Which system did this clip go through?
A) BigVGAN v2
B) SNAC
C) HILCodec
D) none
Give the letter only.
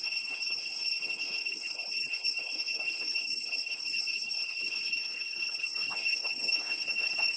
C